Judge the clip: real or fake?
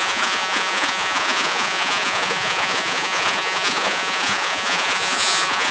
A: fake